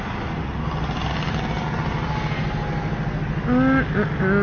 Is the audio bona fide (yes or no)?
yes